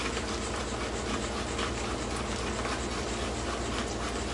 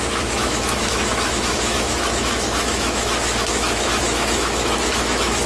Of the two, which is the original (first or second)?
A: first